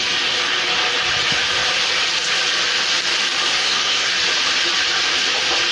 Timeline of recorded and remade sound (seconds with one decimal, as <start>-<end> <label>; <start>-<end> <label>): 0.0-3.5 recorded; 3.5-4.1 remade; 4.1-5.7 recorded